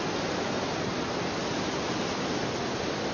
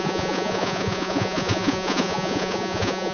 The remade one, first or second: second